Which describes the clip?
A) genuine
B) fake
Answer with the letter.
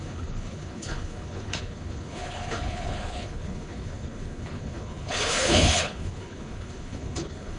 B